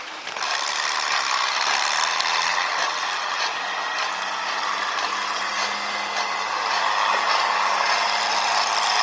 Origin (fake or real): fake